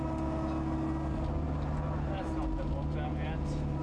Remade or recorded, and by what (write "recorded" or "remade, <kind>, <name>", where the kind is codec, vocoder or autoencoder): recorded